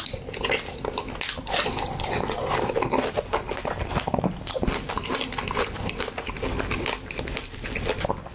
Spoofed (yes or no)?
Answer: no